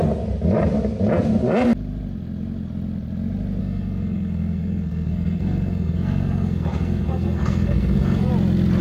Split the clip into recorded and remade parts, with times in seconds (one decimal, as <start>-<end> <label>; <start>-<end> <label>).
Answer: 0.0-3.6 recorded; 3.6-8.3 remade; 8.3-8.8 recorded